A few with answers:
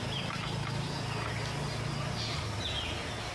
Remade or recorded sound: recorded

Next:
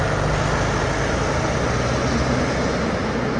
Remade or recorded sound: recorded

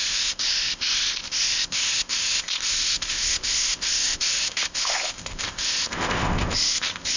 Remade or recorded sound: remade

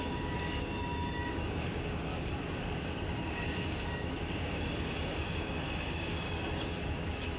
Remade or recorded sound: remade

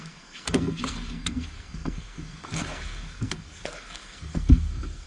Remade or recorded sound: remade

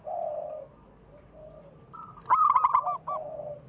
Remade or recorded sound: recorded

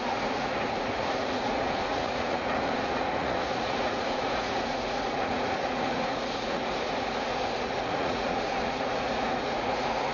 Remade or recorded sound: remade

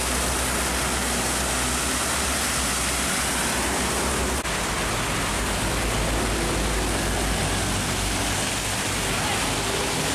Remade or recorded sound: recorded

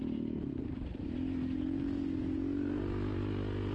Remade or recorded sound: recorded